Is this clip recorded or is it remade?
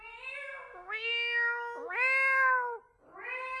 recorded